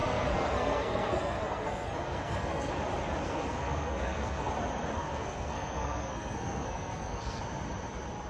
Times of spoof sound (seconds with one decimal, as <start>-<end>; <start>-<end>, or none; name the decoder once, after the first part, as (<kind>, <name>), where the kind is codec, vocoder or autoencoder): 0.0-2.7 (codec, SNAC); 3.2-4.5; 5.0-7.4